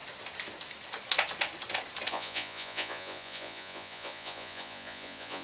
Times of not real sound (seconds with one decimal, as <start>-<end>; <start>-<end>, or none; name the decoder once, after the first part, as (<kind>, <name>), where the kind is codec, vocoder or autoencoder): 2.1-5.4 (vocoder, Vocos)